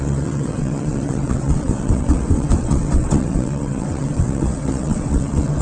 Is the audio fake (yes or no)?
yes